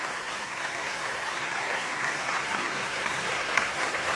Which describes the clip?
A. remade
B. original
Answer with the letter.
A